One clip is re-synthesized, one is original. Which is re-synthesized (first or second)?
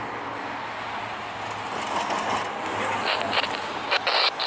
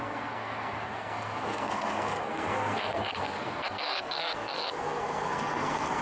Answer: second